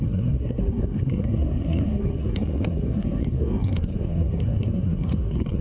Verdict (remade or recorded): remade